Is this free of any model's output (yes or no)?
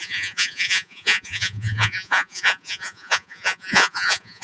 no